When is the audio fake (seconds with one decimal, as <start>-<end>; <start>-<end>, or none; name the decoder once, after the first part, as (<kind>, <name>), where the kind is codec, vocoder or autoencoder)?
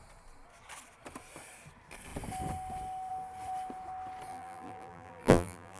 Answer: 4.3-5.8 (vocoder, BigVGAN v2)